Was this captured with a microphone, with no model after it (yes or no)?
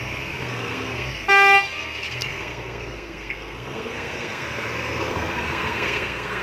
no